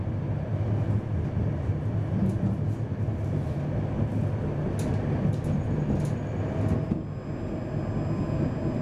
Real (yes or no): yes